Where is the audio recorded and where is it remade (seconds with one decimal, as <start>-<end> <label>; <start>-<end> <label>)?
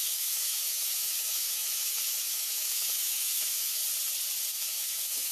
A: 0.0-3.8 remade; 3.8-4.5 recorded; 4.5-5.3 remade